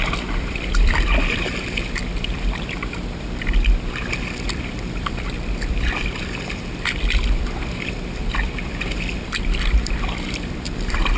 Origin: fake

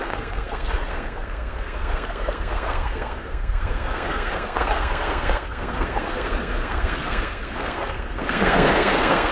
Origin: fake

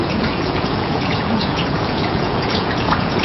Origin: fake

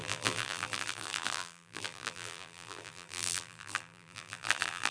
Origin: fake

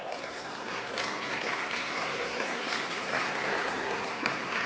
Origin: fake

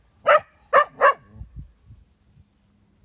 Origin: real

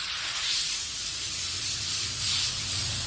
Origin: fake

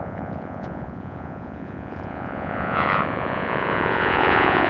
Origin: fake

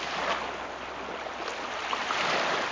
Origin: real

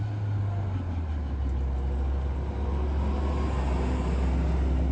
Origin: real